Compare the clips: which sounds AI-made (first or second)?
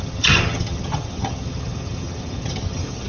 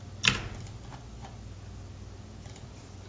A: first